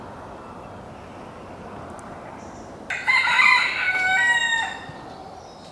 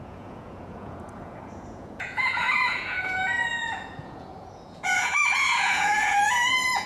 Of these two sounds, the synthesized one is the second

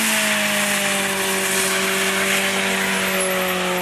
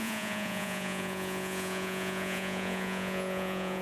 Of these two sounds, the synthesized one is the second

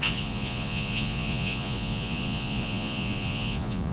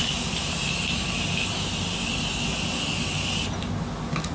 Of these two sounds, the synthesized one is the first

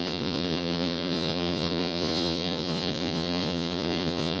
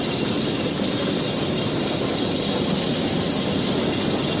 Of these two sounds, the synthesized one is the first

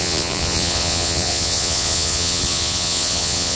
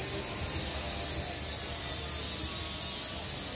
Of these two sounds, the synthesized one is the first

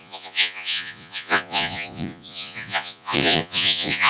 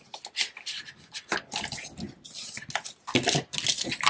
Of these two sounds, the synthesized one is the first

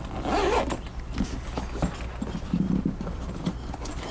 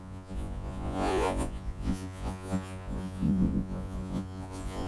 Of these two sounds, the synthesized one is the second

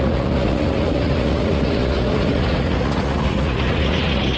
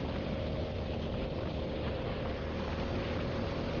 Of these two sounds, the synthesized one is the first